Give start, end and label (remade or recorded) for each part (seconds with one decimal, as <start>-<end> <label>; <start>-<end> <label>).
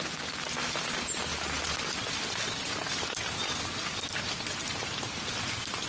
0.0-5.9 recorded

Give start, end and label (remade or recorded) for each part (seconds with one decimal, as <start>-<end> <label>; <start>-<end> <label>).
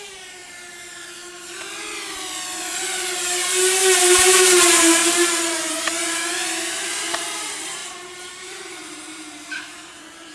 0.0-0.4 remade; 0.4-3.2 recorded; 3.2-5.0 remade; 5.0-5.7 recorded; 5.7-10.3 remade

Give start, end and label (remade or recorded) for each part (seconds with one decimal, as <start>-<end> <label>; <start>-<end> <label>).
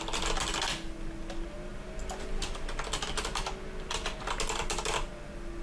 0.0-5.6 recorded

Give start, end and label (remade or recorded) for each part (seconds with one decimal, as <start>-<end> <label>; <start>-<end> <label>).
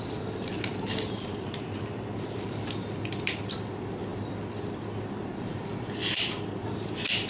0.0-0.7 recorded; 0.7-2.7 remade; 2.7-7.3 recorded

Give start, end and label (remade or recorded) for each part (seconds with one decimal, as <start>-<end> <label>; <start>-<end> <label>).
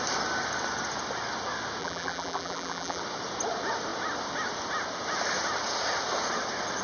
0.0-1.8 recorded; 1.8-3.0 remade; 3.0-6.8 recorded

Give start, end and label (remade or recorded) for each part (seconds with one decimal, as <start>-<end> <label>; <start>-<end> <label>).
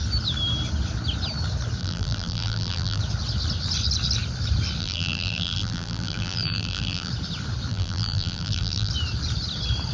0.0-1.8 recorded; 1.8-3.0 remade; 3.0-4.8 recorded; 4.8-7.1 remade; 7.1-7.7 recorded; 7.7-8.9 remade; 8.9-9.9 recorded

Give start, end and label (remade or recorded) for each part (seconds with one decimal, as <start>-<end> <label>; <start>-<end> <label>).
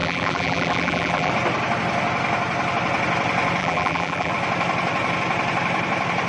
0.0-1.3 remade; 1.3-3.6 recorded; 3.6-4.3 remade; 4.3-6.3 recorded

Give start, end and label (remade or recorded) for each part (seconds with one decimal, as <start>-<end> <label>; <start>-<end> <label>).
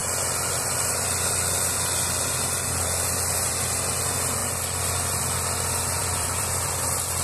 0.0-6.0 recorded; 6.0-6.7 remade; 6.7-7.2 recorded